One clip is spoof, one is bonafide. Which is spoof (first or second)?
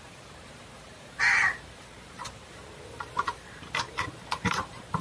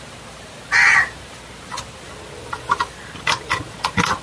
first